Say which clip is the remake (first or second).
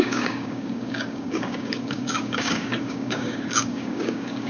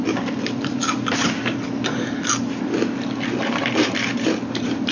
first